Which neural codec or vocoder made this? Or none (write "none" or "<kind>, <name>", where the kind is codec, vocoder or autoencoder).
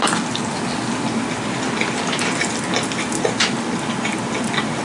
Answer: none